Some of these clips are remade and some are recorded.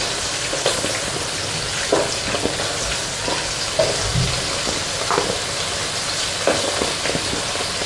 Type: recorded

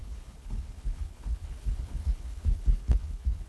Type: remade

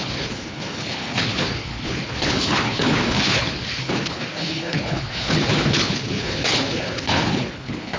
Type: remade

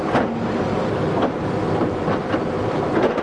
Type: recorded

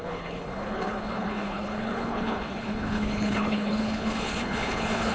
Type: remade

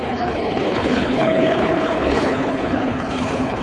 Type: remade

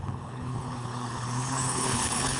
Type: remade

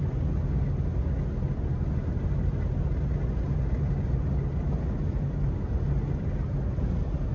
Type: recorded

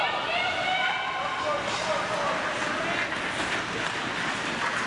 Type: recorded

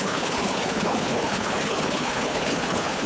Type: remade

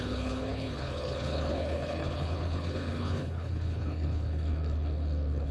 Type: remade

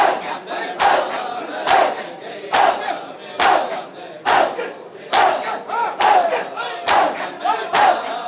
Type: recorded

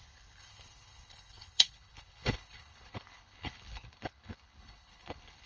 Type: remade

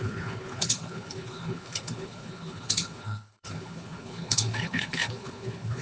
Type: remade